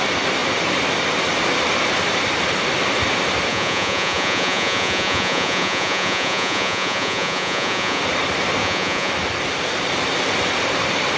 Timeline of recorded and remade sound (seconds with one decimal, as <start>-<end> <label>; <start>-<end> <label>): 0.0-3.5 recorded; 3.5-8.0 remade; 8.0-8.6 recorded; 8.6-9.1 remade; 9.1-11.2 recorded